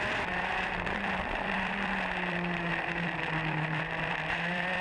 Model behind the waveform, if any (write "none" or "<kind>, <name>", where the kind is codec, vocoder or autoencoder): vocoder, BigVGAN v2